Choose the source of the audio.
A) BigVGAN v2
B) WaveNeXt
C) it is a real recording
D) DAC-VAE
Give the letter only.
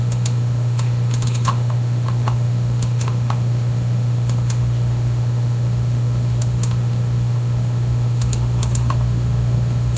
D